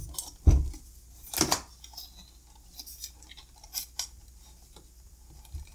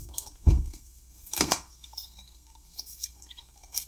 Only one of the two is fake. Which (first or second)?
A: second